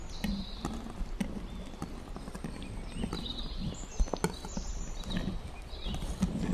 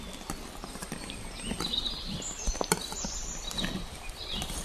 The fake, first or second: second